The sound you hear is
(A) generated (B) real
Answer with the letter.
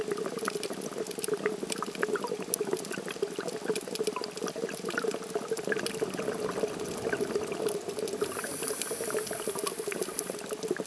B